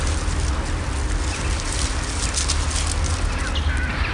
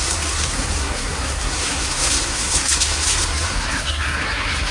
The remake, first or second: second